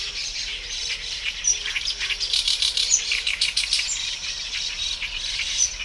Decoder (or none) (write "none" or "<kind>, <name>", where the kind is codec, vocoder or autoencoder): vocoder, BigVGAN v2